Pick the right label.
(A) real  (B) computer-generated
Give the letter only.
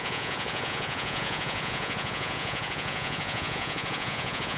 B